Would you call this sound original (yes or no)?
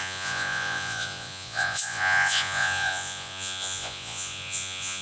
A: no